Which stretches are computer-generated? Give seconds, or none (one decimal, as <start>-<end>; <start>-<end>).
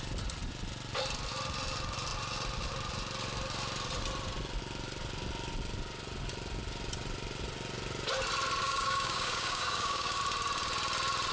8.6-10.2